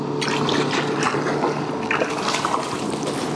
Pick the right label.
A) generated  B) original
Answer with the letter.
B